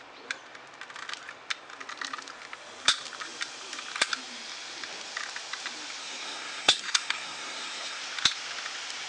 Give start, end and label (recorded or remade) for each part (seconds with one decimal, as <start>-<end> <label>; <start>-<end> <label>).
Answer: 0.0-6.0 recorded; 6.0-8.0 remade; 8.0-9.1 recorded